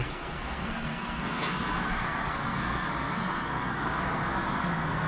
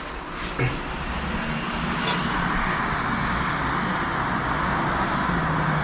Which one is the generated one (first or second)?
first